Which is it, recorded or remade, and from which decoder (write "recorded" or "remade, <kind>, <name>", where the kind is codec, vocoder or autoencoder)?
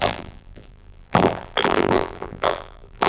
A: remade, vocoder, BigVGAN v2